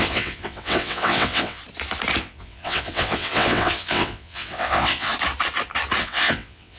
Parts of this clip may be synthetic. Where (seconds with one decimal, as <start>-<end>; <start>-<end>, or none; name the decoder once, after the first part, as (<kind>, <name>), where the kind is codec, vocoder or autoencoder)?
0.0-1.6 (vocoder, WaveNeXt); 2.2-5.1; 6.0-6.8